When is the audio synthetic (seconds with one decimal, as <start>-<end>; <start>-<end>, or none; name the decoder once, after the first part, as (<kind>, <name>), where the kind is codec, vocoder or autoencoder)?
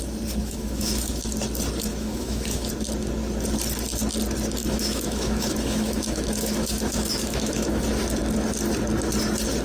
0.4-1.2 (autoencoder, DAC-VAE); 1.9-2.7; 4.6-7.8